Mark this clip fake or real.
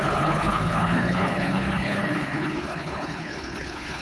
fake